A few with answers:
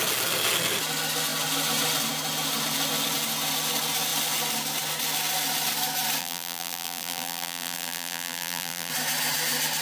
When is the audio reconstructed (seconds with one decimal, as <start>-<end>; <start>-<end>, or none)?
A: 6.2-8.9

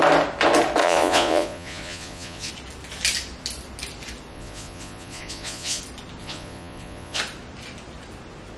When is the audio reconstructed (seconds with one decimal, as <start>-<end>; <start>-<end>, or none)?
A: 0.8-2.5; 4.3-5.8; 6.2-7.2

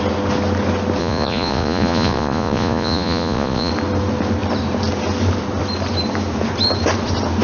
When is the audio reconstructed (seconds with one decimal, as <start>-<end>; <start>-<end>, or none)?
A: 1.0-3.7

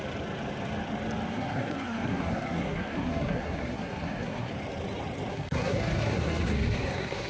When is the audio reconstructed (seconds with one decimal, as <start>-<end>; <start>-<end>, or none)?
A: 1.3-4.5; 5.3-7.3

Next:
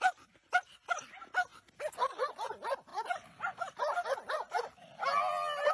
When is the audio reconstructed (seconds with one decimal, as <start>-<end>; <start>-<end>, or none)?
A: none

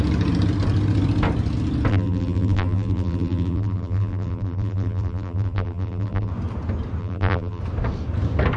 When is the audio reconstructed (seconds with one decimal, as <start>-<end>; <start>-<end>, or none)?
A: 1.9-6.3; 7.0-7.6

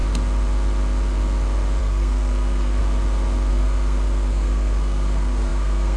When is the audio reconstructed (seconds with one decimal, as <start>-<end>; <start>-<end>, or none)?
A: 1.8-2.8; 3.5-6.0

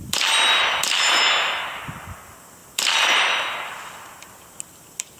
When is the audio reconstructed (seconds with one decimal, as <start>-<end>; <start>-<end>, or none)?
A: none